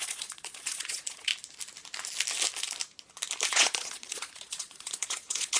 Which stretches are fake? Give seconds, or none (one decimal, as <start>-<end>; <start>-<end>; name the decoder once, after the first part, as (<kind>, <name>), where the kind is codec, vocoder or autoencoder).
0.0-1.3 (vocoder, Vocos); 3.5-5.6